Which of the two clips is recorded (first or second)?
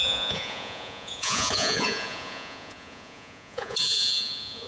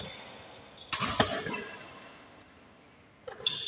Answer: second